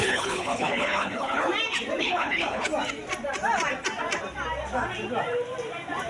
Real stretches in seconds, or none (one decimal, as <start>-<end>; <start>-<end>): 1.5-2.0; 2.7-6.1